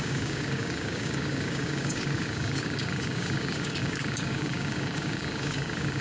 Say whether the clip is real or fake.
fake